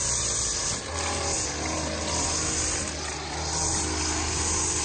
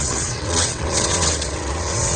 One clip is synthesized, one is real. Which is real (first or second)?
first